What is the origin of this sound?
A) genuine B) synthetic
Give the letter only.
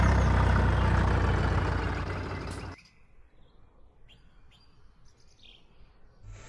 A